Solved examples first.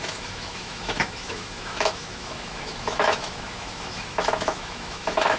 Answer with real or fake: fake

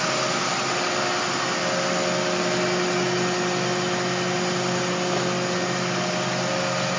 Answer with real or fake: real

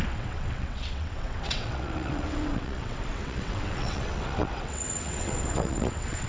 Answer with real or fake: fake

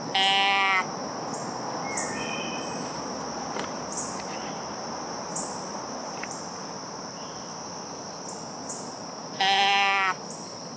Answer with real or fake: real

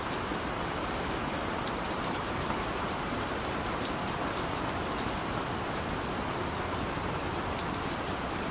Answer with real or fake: real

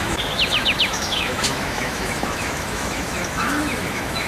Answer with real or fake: fake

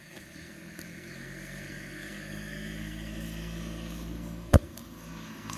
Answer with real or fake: fake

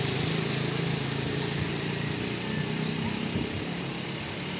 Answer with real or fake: real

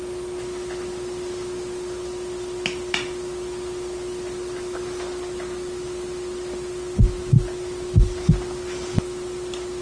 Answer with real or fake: real